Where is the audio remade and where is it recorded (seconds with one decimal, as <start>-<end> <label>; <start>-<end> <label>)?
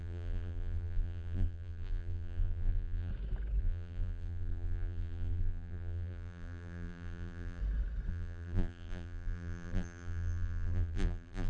0.0-3.1 remade; 3.1-3.6 recorded; 3.6-7.6 remade; 7.6-8.1 recorded; 8.1-11.5 remade